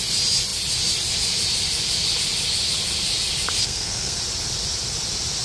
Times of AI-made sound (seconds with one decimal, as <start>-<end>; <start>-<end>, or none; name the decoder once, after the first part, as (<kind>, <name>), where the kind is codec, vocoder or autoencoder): 3.6-4.2 (codec, SNAC)